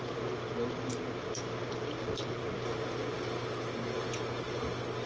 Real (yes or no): yes